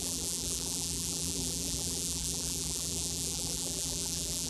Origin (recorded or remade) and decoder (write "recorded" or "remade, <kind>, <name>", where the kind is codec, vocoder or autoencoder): remade, vocoder, BigVGAN v2